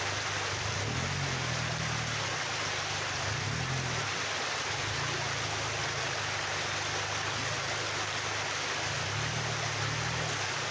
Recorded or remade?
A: recorded